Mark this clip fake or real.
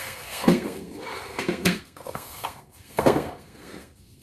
fake